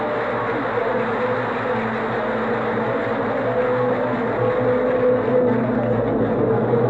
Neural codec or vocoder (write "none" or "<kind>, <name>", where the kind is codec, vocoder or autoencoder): none